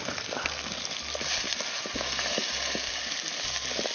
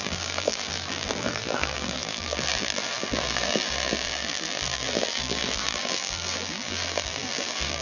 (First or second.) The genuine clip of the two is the first